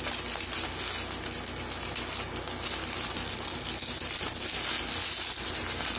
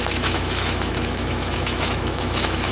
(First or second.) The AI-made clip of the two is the second